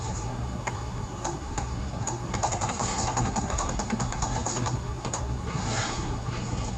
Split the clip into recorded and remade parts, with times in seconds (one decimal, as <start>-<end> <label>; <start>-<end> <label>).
0.0-6.8 remade

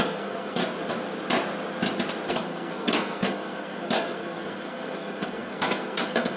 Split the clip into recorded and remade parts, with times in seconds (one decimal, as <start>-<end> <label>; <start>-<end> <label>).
0.0-0.6 remade; 0.6-2.3 recorded; 2.3-6.4 remade